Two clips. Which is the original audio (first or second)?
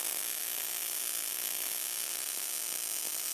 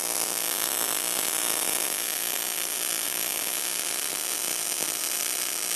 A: first